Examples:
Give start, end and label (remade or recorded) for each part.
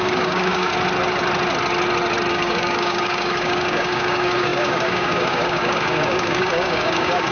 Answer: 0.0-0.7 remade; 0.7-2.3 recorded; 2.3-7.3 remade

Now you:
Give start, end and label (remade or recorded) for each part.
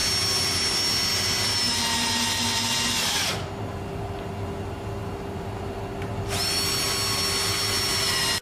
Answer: 0.0-8.4 recorded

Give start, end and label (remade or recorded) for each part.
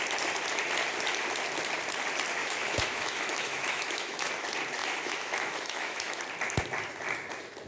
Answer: 0.0-2.4 recorded; 2.4-4.3 remade; 4.3-4.8 recorded; 4.8-6.2 remade; 6.2-7.7 recorded